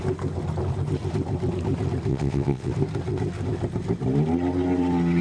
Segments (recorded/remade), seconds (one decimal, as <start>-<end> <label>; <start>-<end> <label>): 0.0-2.1 recorded; 2.1-2.7 remade; 2.7-5.2 recorded